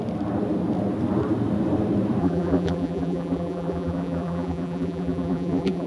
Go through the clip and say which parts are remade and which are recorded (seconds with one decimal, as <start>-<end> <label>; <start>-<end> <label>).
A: 0.0-2.2 recorded; 2.2-5.9 remade